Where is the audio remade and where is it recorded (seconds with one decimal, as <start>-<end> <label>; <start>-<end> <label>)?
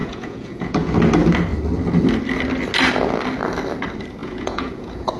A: 0.0-0.9 remade; 0.9-4.2 recorded; 4.2-5.2 remade